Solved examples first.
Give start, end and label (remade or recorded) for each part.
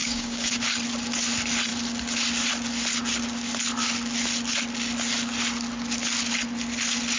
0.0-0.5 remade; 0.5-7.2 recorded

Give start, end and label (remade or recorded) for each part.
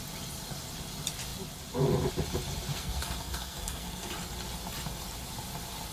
0.0-2.7 recorded; 2.7-4.1 remade; 4.1-5.9 recorded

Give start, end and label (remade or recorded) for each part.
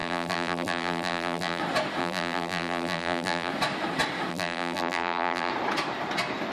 0.0-1.6 remade; 1.6-2.0 recorded; 2.0-3.5 remade; 3.5-4.3 recorded; 4.3-5.5 remade; 5.5-6.5 recorded